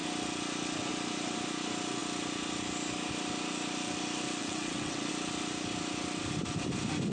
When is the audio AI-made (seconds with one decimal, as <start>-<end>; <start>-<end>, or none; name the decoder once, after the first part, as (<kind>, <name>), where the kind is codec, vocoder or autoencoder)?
4.4-5.1 (vocoder, WaveNeXt)